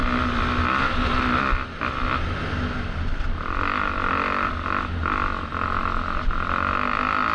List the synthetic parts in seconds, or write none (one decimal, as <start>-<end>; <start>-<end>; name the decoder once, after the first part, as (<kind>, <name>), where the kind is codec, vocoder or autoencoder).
none